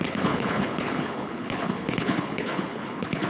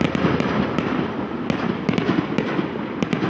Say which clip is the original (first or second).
second